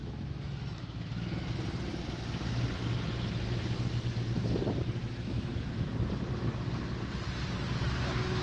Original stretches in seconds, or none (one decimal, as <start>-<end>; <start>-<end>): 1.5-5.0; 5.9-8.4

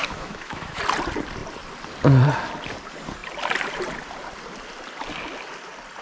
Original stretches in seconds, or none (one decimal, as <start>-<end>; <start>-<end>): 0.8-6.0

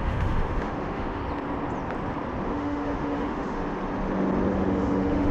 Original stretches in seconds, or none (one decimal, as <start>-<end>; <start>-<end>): 1.2-2.5; 3.6-4.5